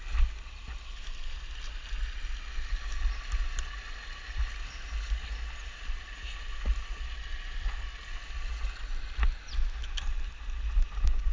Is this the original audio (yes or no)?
yes